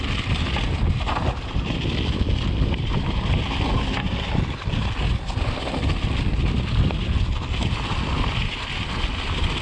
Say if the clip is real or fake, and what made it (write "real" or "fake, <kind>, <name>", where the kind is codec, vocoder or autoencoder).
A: real